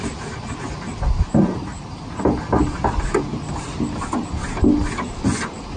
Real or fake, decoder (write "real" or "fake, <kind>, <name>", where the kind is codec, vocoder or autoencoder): real